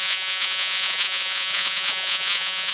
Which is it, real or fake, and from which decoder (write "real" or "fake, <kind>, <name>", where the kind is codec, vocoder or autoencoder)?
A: fake, vocoder, Vocos